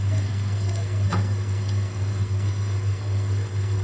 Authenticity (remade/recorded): remade